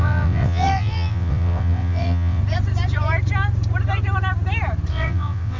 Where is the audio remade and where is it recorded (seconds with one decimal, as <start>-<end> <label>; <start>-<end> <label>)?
0.0-2.4 remade; 2.4-4.9 recorded; 4.9-5.6 remade